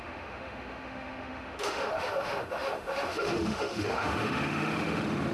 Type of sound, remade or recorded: remade